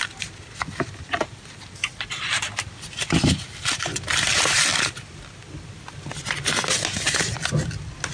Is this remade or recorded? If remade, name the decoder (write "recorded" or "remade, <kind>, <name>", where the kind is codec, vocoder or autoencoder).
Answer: recorded